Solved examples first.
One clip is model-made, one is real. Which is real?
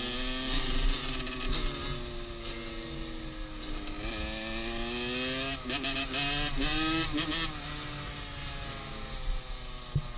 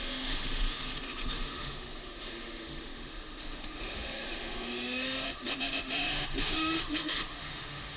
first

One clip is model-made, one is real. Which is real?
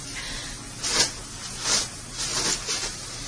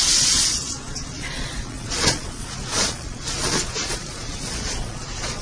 first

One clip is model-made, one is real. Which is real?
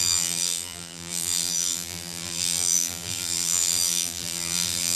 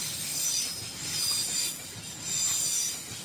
second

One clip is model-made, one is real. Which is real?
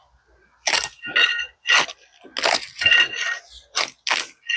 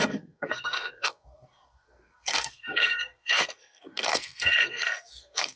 first